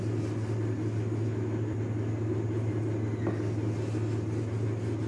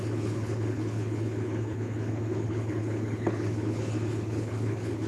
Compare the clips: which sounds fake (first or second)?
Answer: second